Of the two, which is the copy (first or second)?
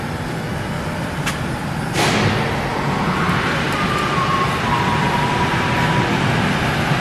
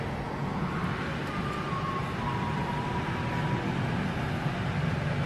first